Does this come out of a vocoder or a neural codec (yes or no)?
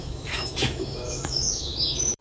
yes